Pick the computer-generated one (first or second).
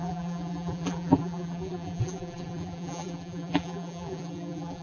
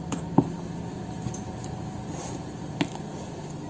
first